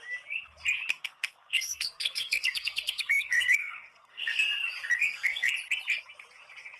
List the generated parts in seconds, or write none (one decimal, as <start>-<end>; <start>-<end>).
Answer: 0.9-4.4; 5.0-5.5